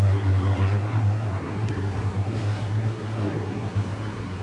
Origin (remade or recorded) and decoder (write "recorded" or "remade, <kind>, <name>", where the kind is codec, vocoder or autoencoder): remade, codec, SNAC